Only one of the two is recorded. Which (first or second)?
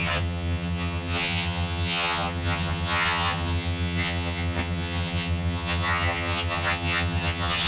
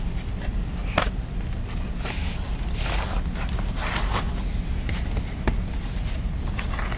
second